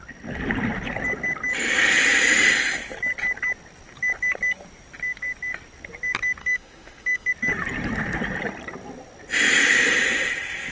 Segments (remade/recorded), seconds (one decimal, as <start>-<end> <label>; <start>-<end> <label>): 0.0-6.4 recorded; 6.4-7.3 remade; 7.3-10.7 recorded